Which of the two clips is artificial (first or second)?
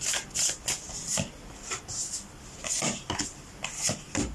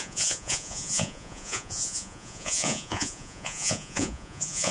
second